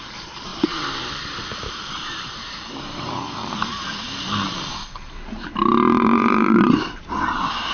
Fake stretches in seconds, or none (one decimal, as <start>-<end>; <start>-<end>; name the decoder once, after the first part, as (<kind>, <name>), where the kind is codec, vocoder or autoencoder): 0.5-4.5 (vocoder, BigVGAN v2); 5.9-7.1